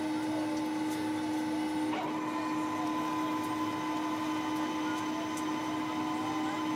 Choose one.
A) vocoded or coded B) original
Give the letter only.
B